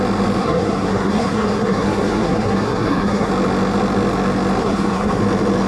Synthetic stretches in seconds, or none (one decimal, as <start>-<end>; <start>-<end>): 0.4-3.3; 4.6-5.2